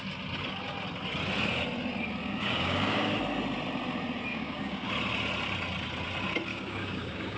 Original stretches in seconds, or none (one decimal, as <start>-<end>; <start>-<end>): 0.0-2.2; 3.1-4.3; 4.9-6.5